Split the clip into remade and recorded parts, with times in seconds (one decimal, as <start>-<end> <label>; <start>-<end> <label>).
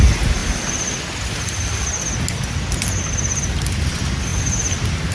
0.0-5.1 recorded